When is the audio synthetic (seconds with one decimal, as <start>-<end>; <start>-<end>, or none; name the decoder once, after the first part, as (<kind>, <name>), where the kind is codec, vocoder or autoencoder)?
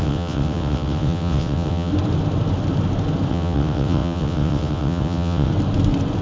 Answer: 0.0-1.9 (vocoder, WaveNeXt); 3.3-5.5